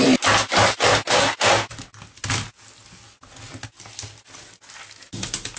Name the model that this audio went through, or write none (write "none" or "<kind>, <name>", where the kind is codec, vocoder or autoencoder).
none